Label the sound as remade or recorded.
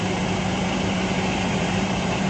remade